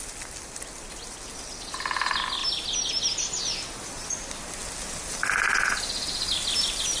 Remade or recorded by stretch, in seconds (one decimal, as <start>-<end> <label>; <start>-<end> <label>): 0.0-7.0 recorded